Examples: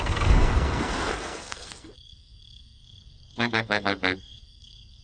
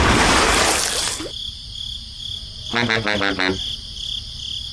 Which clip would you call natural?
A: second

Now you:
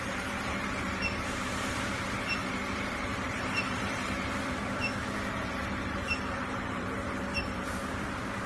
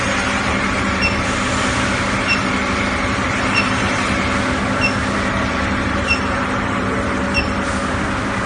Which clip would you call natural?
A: second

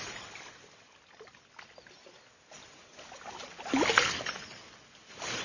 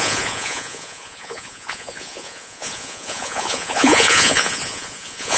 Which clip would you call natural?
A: first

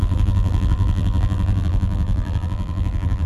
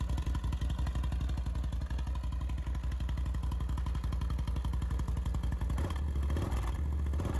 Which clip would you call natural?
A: second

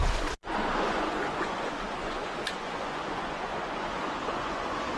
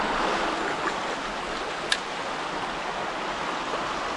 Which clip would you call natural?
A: second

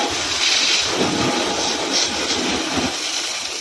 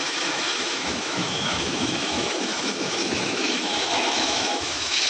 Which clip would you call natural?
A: first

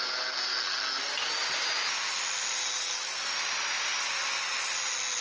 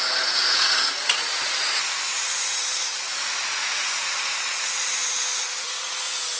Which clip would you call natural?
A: first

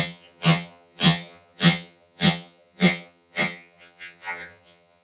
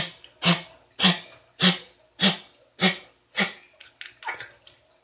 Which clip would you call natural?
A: second